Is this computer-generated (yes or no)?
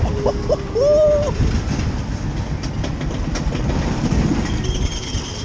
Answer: no